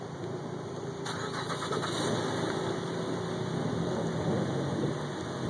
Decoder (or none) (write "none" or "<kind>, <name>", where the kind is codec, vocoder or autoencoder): none